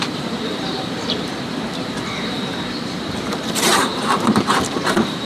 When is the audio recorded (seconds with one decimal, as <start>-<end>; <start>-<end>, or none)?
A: 3.9-4.4